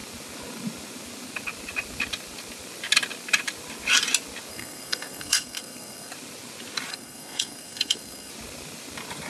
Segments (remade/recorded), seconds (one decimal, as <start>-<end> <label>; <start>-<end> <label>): 0.0-4.5 recorded; 4.5-6.1 remade; 6.1-6.9 recorded; 6.9-8.3 remade; 8.3-9.3 recorded